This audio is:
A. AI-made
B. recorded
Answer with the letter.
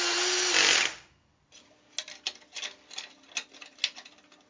B